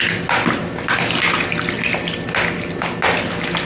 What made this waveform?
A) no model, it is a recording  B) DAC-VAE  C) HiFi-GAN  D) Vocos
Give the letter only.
A